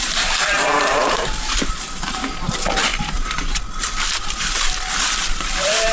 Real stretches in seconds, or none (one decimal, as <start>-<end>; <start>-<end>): 2.9-5.4